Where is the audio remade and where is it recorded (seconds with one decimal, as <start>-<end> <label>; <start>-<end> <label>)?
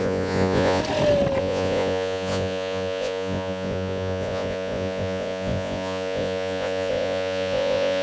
0.0-0.8 remade; 0.8-1.4 recorded; 1.4-8.0 remade